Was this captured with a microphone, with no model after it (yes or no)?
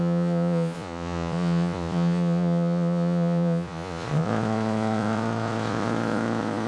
no